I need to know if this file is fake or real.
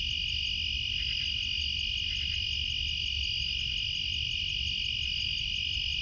real